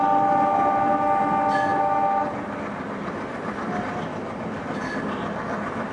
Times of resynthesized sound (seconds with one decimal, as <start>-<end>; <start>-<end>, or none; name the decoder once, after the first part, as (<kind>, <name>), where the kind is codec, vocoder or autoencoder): none